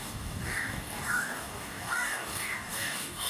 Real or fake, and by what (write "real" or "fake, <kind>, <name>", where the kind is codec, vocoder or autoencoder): fake, codec, DAC